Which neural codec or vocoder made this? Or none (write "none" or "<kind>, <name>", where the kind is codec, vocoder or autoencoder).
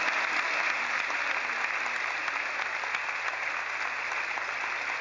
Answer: none